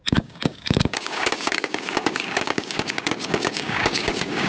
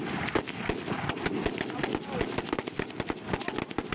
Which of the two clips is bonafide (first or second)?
second